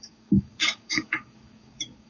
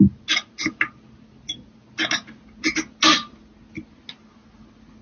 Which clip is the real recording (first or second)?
second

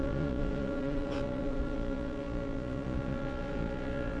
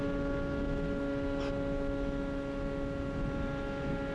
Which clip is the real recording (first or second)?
second